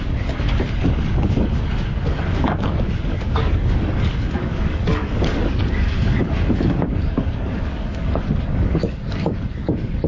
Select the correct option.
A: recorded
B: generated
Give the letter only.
B